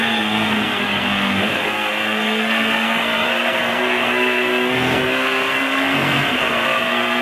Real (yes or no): no